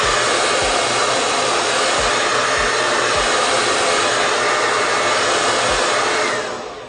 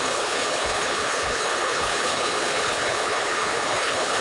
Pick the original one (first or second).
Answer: first